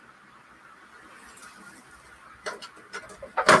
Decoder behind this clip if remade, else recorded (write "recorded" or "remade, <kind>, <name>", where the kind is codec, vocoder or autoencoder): recorded